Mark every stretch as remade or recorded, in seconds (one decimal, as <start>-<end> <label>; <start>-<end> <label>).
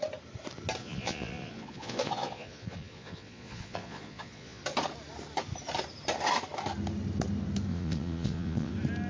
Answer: 0.0-0.8 recorded; 0.8-4.6 remade; 4.6-7.7 recorded; 7.7-8.7 remade; 8.7-9.1 recorded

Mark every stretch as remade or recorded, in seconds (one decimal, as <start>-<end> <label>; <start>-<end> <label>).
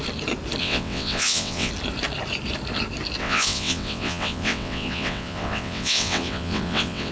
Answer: 0.0-0.6 recorded; 0.6-1.7 remade; 1.7-3.2 recorded; 3.2-7.1 remade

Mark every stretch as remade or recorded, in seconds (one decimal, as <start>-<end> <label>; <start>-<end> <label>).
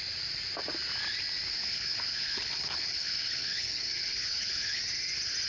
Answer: 0.0-1.5 recorded; 1.5-4.8 remade; 4.8-5.5 recorded